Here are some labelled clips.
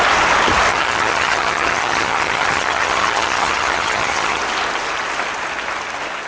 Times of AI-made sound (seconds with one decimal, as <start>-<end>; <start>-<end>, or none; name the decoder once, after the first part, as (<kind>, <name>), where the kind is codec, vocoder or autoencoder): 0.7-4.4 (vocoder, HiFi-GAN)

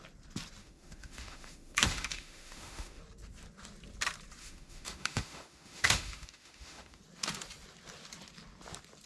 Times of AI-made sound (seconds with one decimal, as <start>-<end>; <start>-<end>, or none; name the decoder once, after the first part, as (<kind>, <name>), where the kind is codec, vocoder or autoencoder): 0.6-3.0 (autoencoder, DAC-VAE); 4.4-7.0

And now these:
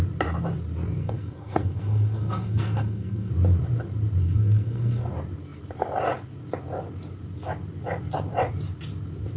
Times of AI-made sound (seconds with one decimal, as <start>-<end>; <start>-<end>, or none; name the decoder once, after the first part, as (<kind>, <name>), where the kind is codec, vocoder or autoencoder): 1.0-3.3 (codec, SNAC); 4.2-5.1